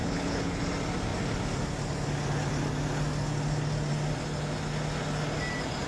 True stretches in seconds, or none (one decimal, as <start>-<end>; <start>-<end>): 0.6-5.9